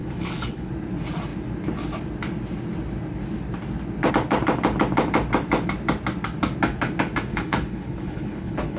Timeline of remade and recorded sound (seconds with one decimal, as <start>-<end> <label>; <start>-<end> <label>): 0.0-0.7 remade; 0.7-7.3 recorded; 7.3-8.8 remade